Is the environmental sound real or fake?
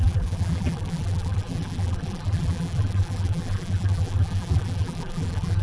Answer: fake